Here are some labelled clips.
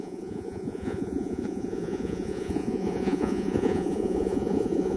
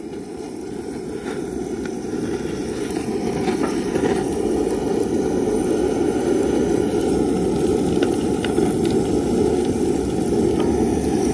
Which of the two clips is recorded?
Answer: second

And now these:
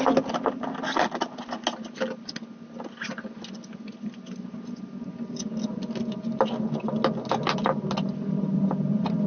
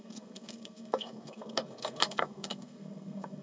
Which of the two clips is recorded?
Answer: first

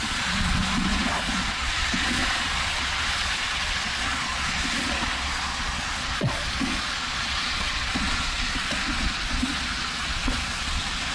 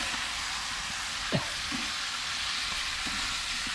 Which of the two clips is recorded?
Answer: second